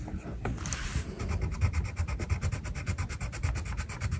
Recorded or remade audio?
recorded